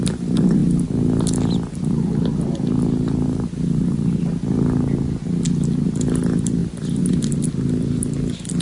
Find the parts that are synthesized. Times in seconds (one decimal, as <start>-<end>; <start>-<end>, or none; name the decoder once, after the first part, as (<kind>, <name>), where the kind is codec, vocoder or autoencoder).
none